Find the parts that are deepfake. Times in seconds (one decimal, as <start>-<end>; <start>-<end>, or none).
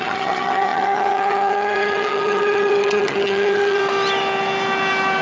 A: 0.0-3.8